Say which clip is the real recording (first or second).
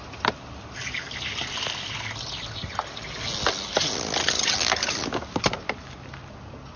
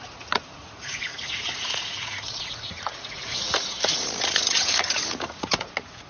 first